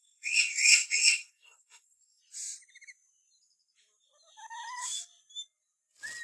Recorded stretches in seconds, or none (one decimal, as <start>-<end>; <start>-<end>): 2.2-6.2